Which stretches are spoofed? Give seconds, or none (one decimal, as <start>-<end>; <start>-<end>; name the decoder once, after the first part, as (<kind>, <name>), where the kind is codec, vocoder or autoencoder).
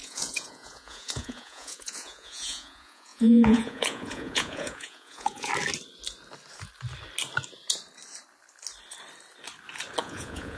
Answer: 0.0-5.5 (vocoder, Vocos); 10.0-10.6